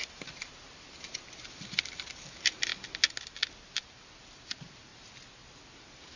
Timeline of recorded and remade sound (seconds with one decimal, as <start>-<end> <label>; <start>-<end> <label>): 0.0-2.7 remade; 2.7-3.8 recorded; 3.8-4.9 remade; 4.9-6.2 recorded